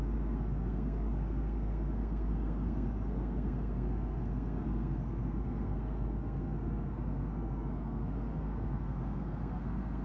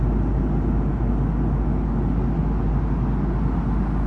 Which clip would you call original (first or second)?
second